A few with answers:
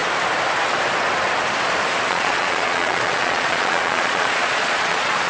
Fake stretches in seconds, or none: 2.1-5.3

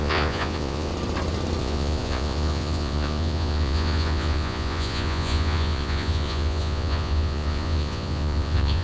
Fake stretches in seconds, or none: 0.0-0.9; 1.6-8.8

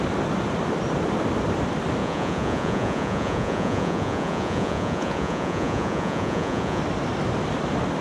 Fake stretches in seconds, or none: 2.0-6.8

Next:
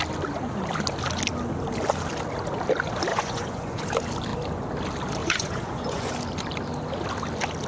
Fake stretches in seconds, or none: 3.1-3.8; 5.2-6.1

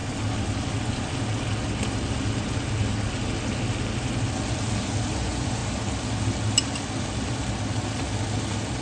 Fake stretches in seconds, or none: 5.1-5.6

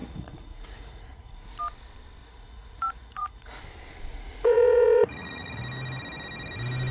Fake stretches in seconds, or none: 0.0-1.6; 2.2-3.6; 4.1-5.6